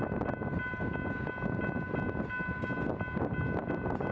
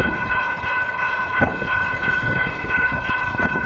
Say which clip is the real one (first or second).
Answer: first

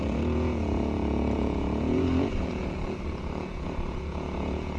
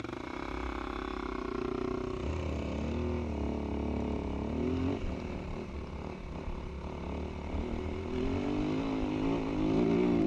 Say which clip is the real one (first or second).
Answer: second